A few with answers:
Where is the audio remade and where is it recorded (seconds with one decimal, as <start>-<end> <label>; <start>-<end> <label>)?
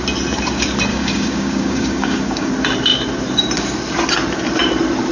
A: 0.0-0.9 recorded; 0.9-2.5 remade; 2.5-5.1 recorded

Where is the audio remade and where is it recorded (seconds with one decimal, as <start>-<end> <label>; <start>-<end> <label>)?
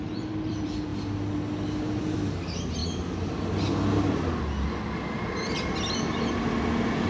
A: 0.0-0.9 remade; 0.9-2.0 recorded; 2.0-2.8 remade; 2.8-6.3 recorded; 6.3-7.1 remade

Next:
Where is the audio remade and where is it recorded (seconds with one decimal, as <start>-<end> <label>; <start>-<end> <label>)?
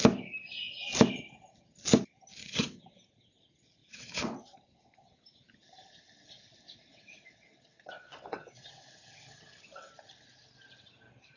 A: 0.0-2.4 recorded; 2.4-3.0 remade; 3.0-3.8 recorded; 3.8-4.6 remade; 4.6-6.9 recorded; 6.9-9.9 remade; 9.9-11.4 recorded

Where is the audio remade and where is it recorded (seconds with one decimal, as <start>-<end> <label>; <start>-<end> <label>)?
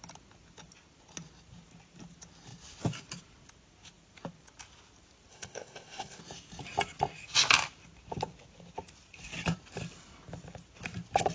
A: 0.0-5.3 recorded; 5.3-6.2 remade; 6.2-11.3 recorded